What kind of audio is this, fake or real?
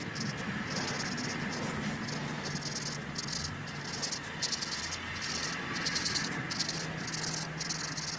real